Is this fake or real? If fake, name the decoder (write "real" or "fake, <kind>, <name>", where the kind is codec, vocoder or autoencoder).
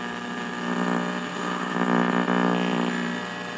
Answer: fake, vocoder, BigVGAN v2